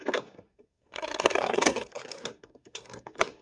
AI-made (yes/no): yes